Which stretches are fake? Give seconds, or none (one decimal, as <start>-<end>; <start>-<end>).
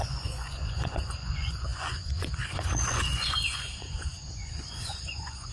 0.0-5.5